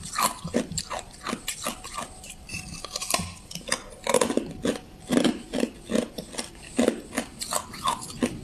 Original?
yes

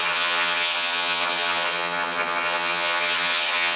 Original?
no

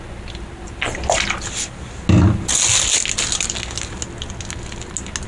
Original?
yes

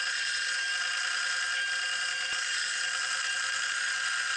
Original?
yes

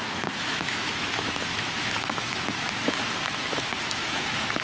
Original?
no